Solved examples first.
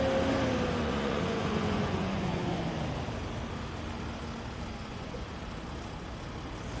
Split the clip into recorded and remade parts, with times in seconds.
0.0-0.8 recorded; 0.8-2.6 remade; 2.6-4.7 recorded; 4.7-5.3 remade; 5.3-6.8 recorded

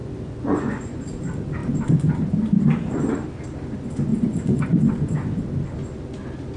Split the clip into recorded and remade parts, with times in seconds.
0.0-1.0 remade; 1.0-4.1 recorded; 4.1-5.4 remade; 5.4-6.6 recorded

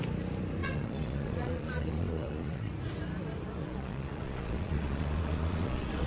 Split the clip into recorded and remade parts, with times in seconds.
0.0-0.6 recorded; 0.6-2.7 remade; 2.7-3.6 recorded; 3.6-6.1 remade

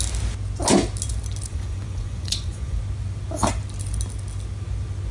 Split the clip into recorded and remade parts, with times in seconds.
0.0-1.5 recorded; 1.5-2.8 remade; 2.8-5.1 recorded